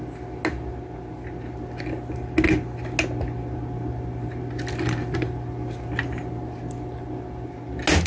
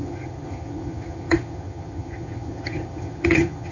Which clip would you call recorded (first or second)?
first